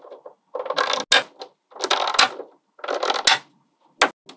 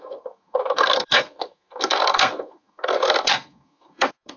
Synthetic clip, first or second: second